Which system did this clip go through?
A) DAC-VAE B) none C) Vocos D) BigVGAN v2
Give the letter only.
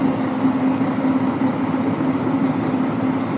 B